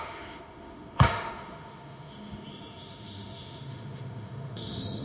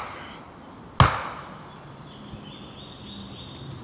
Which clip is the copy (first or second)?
first